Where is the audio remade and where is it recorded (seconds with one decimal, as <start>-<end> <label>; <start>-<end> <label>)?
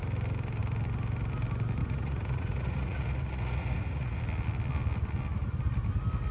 0.0-1.8 recorded; 1.8-4.2 remade; 4.2-6.3 recorded